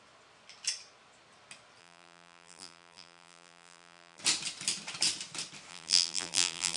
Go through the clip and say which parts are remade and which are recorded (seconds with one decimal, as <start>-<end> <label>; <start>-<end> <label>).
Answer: 0.0-1.8 recorded; 1.8-4.2 remade; 4.2-5.7 recorded; 5.7-6.8 remade